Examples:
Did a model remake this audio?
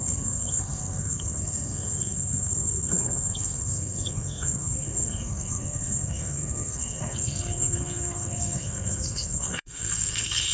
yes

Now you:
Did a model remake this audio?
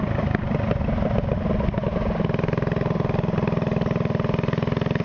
no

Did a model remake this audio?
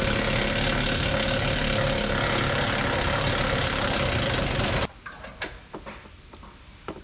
no